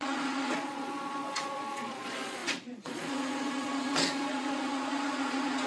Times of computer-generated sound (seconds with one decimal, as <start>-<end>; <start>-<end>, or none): 0.0-5.7